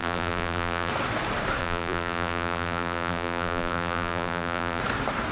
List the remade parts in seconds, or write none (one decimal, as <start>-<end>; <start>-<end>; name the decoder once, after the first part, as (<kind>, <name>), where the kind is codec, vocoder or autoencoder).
0.0-0.9 (vocoder, BigVGAN v2); 1.6-4.8